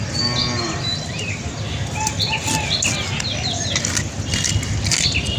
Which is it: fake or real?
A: real